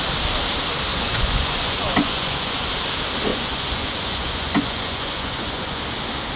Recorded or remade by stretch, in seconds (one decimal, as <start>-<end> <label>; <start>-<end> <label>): 0.0-0.9 recorded; 0.9-2.7 remade; 2.7-3.3 recorded; 3.3-5.8 remade; 5.8-6.4 recorded